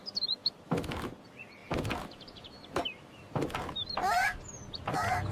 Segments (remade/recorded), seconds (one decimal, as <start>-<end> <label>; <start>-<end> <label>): 0.0-5.3 recorded